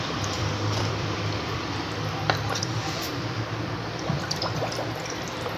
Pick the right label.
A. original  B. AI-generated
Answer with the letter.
B